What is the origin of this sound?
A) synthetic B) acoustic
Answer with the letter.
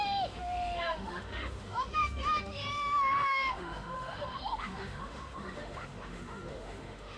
A